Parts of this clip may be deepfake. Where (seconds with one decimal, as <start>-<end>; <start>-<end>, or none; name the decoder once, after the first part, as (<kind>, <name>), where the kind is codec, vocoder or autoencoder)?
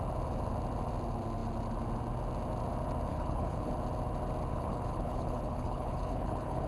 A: 3.1-3.7 (codec, HILCodec); 4.5-6.7